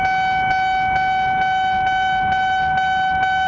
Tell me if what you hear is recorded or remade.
recorded